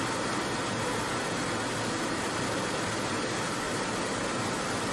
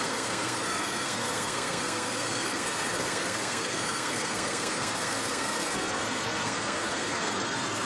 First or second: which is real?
first